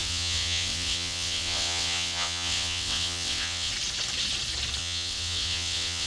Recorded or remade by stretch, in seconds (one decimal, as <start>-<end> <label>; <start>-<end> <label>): 0.0-3.7 remade; 3.7-4.8 recorded; 4.8-6.1 remade